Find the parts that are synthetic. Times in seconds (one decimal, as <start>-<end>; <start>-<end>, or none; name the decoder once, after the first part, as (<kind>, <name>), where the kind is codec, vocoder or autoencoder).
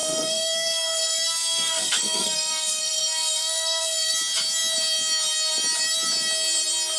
0.0-4.1 (codec, SNAC)